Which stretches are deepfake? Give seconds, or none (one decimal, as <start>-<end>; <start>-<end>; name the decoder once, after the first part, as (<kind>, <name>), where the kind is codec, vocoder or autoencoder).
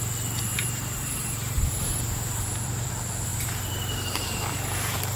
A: 0.5-2.9 (vocoder, BigVGAN v2); 3.3-5.2